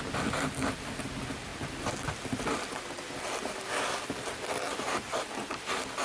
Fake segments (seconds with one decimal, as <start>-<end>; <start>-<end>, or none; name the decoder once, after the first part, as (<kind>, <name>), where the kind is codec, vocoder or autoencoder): none